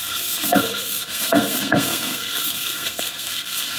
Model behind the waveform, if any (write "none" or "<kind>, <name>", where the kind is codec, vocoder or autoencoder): codec, SNAC